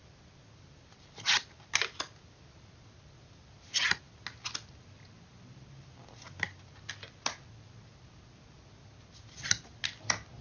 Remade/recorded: recorded